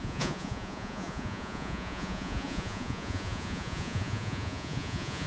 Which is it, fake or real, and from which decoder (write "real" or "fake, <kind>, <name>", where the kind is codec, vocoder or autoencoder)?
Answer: fake, vocoder, Vocos